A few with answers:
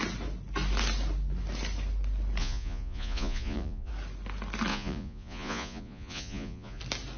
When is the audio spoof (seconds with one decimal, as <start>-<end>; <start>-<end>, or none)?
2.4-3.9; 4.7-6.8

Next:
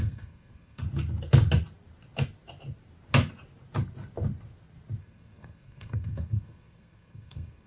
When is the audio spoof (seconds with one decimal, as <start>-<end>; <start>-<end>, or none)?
0.0-0.8; 5.0-7.7

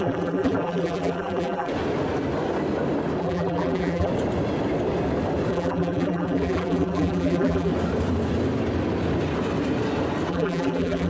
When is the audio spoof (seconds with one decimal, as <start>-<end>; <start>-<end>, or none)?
0.0-1.7; 3.2-4.1; 5.5-7.7; 10.3-11.1